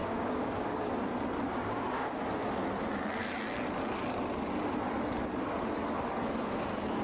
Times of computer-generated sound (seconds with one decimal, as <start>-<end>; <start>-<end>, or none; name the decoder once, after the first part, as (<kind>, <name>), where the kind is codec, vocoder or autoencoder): 0.0-0.9 (codec, DAC); 1.6-2.2